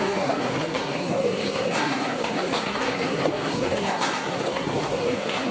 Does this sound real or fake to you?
fake